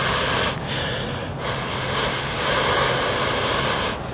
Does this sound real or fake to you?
real